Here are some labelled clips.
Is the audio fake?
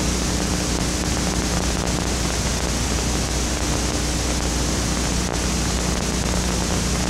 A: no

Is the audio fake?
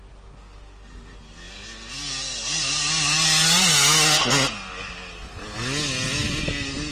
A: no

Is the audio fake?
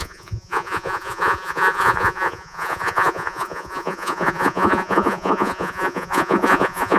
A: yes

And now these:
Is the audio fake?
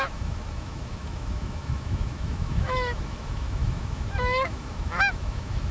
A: yes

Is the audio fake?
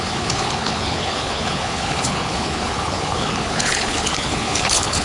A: yes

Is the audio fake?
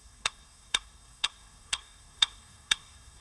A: yes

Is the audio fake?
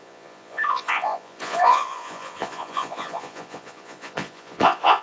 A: yes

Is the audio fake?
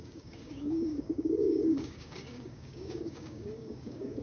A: yes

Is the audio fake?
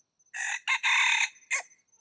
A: no